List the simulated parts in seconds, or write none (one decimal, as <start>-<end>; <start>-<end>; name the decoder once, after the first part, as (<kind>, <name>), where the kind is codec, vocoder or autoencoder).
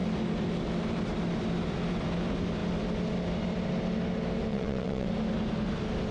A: 4.5-5.1 (vocoder, WaveNeXt)